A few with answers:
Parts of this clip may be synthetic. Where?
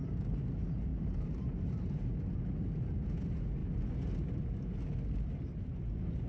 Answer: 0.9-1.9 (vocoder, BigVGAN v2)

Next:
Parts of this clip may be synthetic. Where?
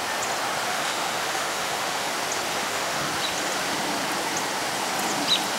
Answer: 0.7-2.1 (autoencoder, DAC-VAE); 2.5-3.1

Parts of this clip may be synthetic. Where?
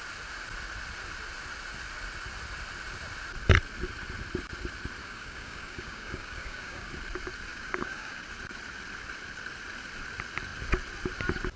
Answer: 5.0-6.9 (codec, DAC); 7.5-8.2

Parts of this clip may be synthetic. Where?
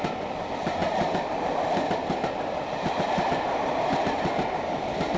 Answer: none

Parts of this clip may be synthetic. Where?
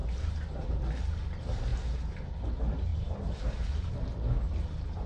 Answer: 0.0-0.8 (vocoder, BigVGAN v2); 2.9-3.9